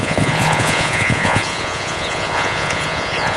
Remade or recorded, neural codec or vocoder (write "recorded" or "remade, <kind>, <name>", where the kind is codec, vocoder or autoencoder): remade, vocoder, Vocos